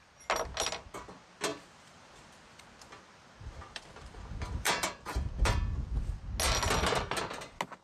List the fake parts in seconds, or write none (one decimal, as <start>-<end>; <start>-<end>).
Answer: 1.5-5.9